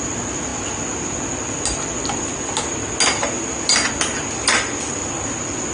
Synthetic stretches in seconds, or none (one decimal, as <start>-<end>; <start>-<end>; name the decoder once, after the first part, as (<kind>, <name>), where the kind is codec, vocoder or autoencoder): none